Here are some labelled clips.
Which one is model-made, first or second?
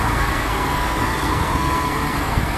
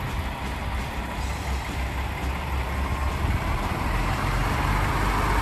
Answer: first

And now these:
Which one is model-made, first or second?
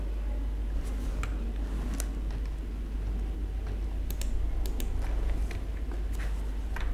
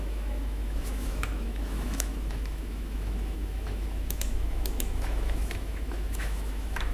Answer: second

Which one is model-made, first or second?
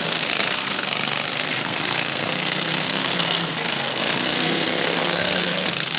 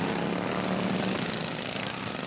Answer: first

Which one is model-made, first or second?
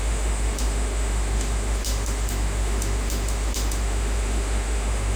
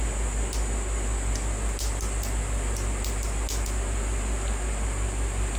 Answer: first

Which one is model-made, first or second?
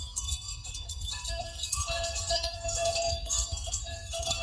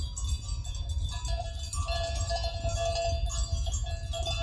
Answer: first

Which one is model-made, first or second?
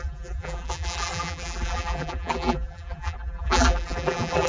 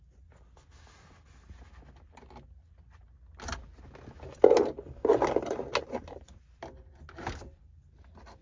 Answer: first